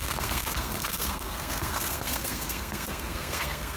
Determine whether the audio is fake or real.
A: fake